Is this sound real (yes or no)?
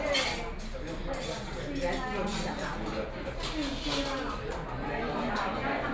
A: yes